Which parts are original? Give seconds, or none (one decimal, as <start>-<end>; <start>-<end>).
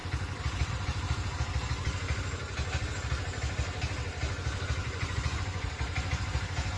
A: 0.0-4.8; 5.7-6.8